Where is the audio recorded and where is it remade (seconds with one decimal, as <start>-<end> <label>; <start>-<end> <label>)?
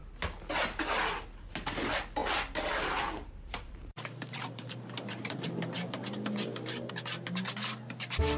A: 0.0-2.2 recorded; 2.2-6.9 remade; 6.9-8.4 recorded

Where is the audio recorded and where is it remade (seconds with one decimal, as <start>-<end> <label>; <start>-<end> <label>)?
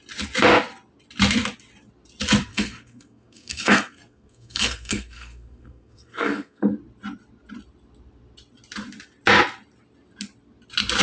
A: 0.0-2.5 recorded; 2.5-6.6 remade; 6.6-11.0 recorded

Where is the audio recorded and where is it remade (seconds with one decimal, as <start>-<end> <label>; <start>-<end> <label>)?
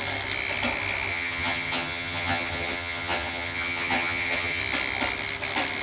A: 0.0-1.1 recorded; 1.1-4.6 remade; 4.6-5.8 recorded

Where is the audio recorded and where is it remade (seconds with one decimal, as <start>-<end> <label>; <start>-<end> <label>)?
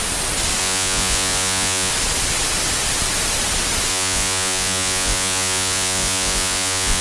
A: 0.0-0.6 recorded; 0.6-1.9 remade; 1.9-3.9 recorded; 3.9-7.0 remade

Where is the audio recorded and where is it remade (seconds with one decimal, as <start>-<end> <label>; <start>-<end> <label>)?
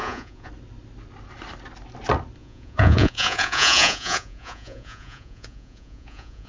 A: 0.0-0.5 remade; 0.5-2.4 recorded; 2.4-6.5 remade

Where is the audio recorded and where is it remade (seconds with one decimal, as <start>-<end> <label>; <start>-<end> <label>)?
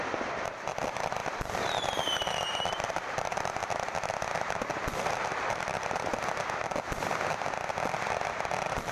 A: 0.0-3.6 remade; 3.6-5.0 recorded; 5.0-6.1 remade; 6.1-8.2 recorded; 8.2-8.9 remade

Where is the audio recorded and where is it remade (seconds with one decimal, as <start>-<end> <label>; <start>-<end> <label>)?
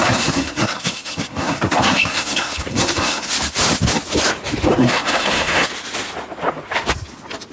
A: 0.0-3.3 remade; 3.3-4.7 recorded; 4.7-5.7 remade; 5.7-7.5 recorded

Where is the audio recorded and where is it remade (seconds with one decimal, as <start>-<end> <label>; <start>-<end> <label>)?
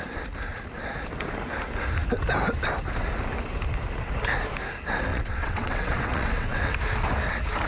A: 0.0-5.1 recorded; 5.1-6.7 remade; 6.7-7.7 recorded